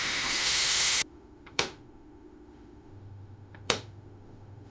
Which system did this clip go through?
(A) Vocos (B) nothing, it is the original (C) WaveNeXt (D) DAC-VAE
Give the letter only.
D